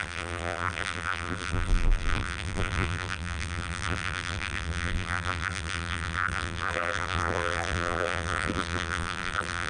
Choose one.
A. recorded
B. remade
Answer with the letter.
B